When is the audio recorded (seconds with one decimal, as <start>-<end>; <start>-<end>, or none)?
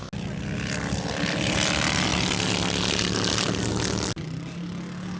0.0-5.2